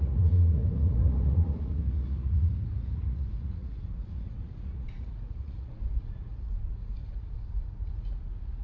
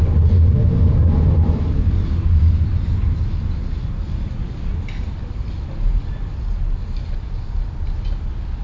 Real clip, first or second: second